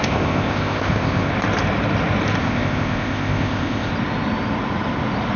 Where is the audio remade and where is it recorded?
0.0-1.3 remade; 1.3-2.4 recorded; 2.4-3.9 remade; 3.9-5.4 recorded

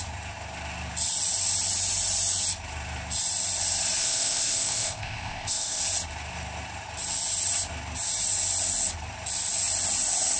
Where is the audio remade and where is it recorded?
0.0-4.0 recorded; 4.0-5.8 remade; 5.8-10.4 recorded